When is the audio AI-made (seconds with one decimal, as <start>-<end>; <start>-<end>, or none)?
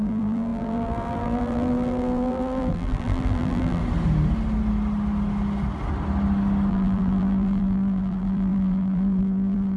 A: 0.0-3.8; 6.7-9.8